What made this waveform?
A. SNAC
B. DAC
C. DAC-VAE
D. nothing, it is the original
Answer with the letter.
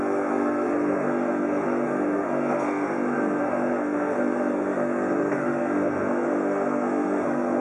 A